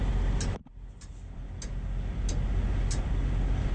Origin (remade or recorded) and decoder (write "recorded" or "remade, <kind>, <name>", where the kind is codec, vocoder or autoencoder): recorded